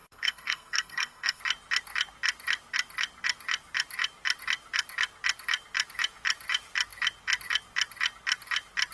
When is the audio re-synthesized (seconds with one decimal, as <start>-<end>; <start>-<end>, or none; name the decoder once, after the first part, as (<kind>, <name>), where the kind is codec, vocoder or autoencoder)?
0.0-1.4 (codec, SNAC)